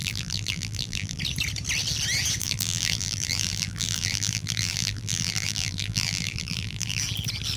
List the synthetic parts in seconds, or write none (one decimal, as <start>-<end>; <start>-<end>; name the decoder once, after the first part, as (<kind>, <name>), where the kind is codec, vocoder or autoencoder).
0.0-1.2 (vocoder, BigVGAN v2); 2.4-7.0